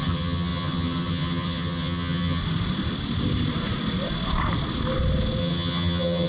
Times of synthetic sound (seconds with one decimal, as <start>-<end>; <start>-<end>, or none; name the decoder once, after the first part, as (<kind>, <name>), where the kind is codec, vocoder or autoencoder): 0.0-2.4 (vocoder, HiFi-GAN); 5.4-6.3